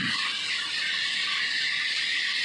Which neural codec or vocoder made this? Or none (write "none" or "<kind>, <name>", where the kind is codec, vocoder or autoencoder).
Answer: none